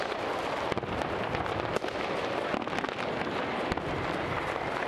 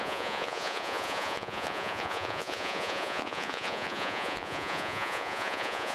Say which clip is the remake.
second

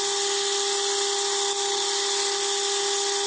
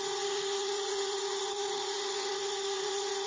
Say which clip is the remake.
second